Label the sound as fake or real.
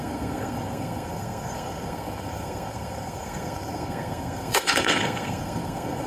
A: fake